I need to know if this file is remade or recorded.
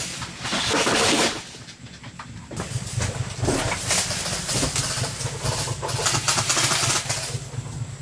recorded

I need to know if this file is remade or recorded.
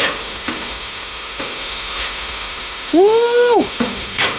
remade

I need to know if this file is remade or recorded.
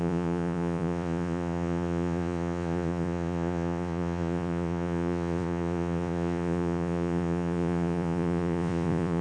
remade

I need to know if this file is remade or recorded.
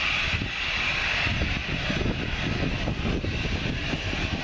recorded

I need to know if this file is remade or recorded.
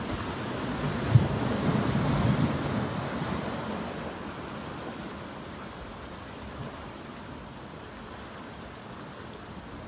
recorded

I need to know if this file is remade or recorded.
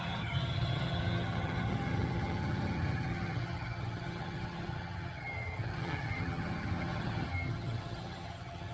remade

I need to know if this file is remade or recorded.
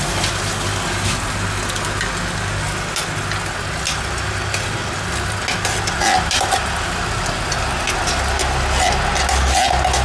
recorded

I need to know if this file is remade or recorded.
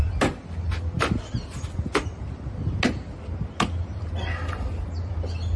recorded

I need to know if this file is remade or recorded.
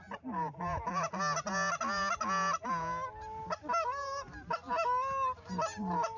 recorded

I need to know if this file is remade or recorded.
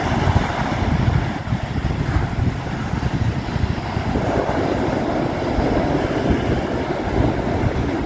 recorded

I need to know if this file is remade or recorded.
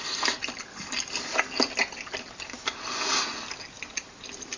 recorded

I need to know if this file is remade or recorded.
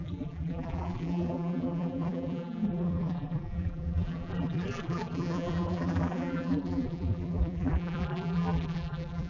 remade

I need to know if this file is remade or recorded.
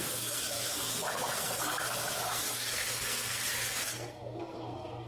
remade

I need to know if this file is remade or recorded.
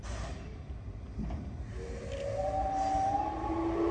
recorded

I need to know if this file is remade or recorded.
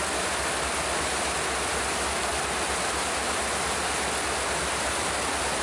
recorded